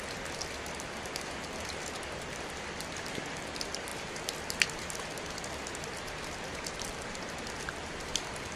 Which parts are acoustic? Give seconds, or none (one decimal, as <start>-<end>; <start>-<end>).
3.9-6.6